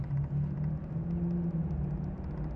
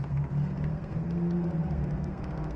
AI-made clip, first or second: second